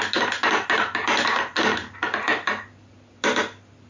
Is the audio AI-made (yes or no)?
no